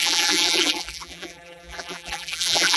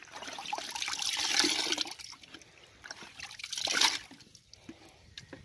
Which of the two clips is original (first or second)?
second